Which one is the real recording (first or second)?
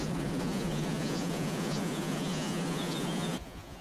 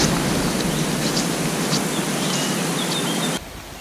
second